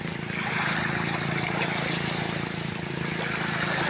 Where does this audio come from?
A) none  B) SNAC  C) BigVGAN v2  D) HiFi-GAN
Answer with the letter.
A